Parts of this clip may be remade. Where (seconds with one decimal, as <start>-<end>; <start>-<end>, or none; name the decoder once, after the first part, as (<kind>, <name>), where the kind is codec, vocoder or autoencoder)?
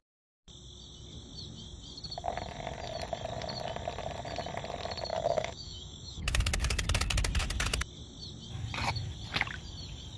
5.1-6.4 (autoencoder, DAC-VAE)